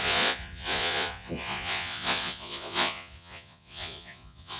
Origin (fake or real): fake